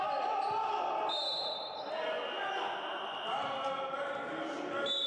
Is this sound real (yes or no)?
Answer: yes